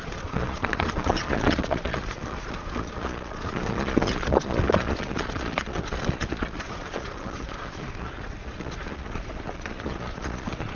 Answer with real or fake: fake